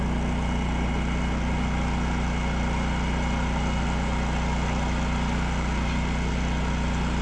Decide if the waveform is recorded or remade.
recorded